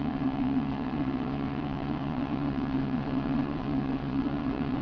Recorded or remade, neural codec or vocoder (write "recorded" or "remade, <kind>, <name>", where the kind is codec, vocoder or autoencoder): remade, vocoder, WaveNeXt